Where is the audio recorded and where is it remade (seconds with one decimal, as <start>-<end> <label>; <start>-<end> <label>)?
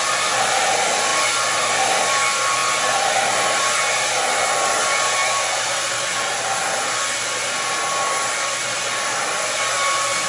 0.0-10.3 recorded